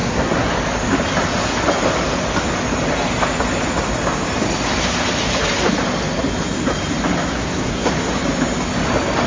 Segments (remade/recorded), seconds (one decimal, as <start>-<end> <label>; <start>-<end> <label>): 0.0-0.5 remade; 0.5-7.3 recorded; 7.3-7.9 remade; 7.9-9.3 recorded